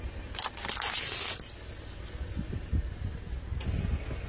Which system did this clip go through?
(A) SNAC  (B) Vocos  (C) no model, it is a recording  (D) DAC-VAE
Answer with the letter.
C